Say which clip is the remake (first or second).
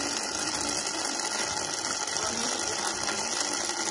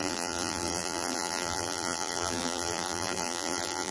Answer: second